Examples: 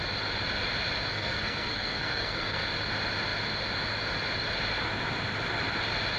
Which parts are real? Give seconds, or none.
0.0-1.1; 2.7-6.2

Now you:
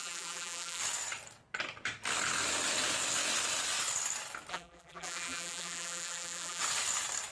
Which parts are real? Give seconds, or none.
0.8-4.5; 6.6-7.3

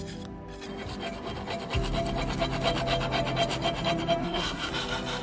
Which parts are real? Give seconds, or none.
0.0-4.2; 4.7-5.2

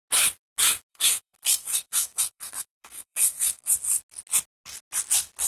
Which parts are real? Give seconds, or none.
0.0-0.9; 3.7-5.5

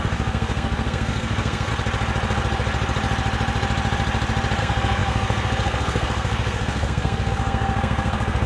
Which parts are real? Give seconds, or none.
1.7-4.6

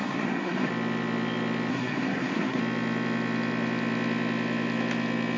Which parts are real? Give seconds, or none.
0.7-1.7; 2.6-5.4